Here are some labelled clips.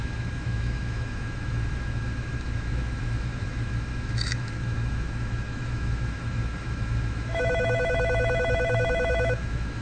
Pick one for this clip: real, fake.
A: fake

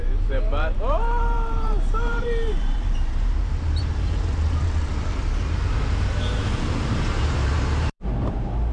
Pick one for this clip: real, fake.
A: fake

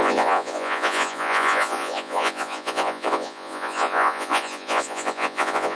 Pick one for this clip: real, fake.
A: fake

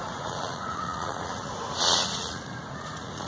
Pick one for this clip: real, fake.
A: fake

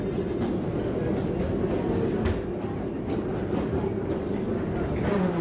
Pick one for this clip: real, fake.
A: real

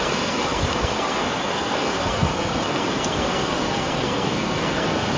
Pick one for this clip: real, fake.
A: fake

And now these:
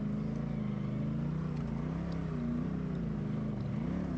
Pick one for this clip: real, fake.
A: real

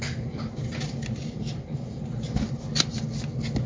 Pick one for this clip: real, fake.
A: real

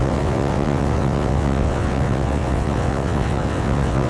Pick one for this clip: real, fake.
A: fake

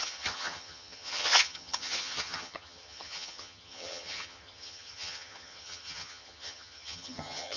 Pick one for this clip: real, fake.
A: fake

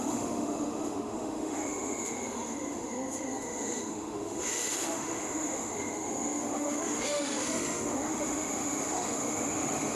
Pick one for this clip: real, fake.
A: fake